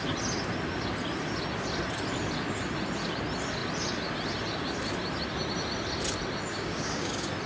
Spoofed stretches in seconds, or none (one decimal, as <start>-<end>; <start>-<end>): 6.5-7.1

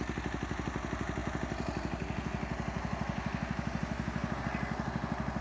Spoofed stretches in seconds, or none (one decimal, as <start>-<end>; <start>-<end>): none

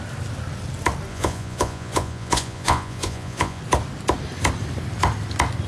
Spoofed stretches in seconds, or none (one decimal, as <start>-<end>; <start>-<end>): 1.1-3.6

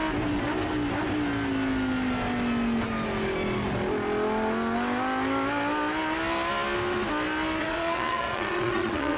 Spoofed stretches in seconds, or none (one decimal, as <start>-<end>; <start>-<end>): 7.6-9.2